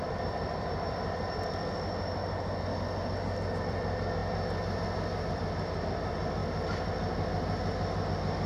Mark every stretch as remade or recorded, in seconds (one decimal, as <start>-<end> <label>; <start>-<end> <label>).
0.0-2.7 remade; 2.7-3.6 recorded; 3.6-4.2 remade; 4.2-5.3 recorded; 5.3-6.4 remade; 6.4-8.1 recorded; 8.1-8.5 remade